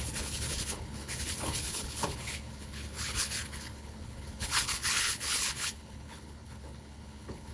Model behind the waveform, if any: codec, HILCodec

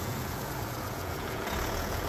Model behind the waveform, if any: vocoder, Vocos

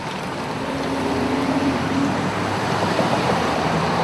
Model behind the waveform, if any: vocoder, BigVGAN v2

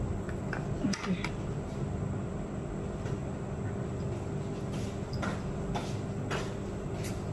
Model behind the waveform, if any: none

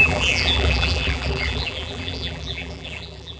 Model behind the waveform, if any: vocoder, BigVGAN v2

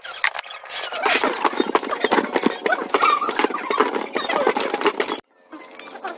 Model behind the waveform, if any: none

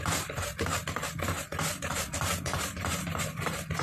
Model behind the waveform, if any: none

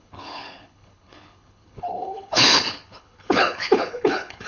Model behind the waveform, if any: codec, HILCodec